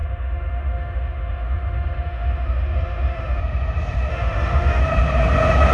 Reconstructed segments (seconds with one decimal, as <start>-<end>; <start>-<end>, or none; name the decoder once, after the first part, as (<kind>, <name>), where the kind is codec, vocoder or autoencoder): 0.0-3.4 (autoencoder, DAC-VAE); 4.1-4.8